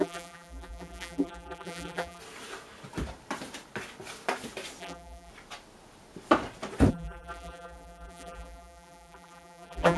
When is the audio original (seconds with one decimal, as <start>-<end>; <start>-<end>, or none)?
2.2-4.8; 5.3-6.9